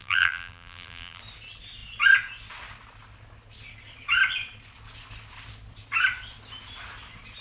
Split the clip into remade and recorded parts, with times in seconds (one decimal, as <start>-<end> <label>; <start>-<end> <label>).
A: 0.0-1.2 remade; 1.2-7.4 recorded